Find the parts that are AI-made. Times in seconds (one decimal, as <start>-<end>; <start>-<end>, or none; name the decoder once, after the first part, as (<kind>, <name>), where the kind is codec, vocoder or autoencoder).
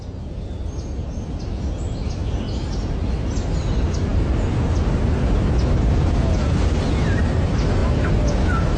none